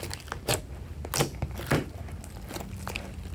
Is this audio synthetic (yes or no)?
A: no